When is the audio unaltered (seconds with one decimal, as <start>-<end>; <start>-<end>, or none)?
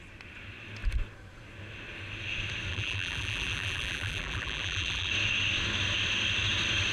0.0-2.7; 5.1-6.9